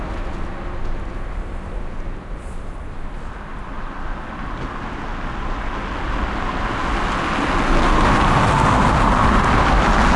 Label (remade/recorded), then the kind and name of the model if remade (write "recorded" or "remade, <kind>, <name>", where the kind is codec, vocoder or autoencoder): recorded